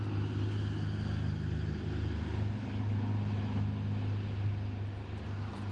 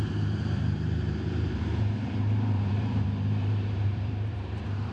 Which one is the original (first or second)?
first